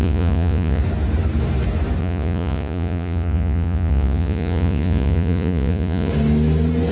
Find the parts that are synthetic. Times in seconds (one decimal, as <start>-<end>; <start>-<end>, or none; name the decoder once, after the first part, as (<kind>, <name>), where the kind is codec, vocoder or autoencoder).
0.0-0.8 (vocoder, Vocos); 2.0-6.1